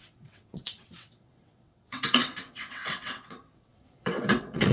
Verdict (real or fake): fake